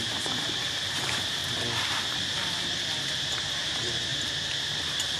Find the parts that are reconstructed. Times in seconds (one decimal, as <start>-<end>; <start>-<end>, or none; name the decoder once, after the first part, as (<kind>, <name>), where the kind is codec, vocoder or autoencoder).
0.0-1.4 (vocoder, BigVGAN v2); 3.2-5.2